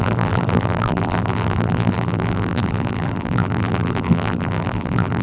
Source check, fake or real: fake